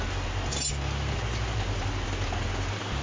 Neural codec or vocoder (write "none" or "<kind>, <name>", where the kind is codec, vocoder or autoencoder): none